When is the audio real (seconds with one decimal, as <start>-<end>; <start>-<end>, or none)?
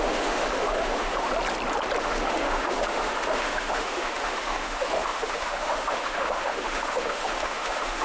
1.3-2.0